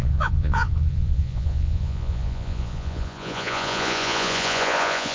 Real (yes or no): no